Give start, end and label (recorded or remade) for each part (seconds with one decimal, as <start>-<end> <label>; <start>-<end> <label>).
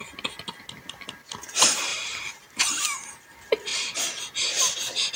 0.0-1.9 recorded; 1.9-3.1 remade; 3.1-3.7 recorded; 3.7-4.2 remade; 4.2-5.2 recorded